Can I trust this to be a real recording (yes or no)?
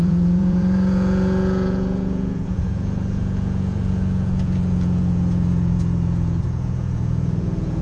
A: no